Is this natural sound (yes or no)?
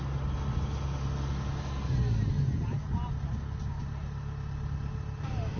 yes